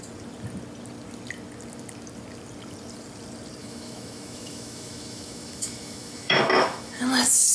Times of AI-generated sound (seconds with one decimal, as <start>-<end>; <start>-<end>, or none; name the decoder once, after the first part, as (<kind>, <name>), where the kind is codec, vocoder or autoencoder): 3.6-7.0 (autoencoder, DAC-VAE)